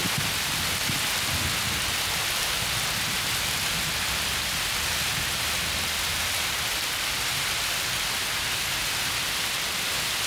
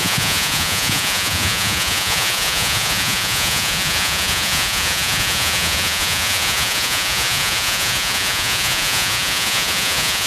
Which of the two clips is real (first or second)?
first